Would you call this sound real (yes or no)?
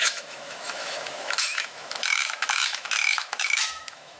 no